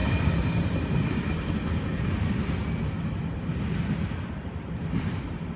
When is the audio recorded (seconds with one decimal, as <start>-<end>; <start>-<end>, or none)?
1.0-5.6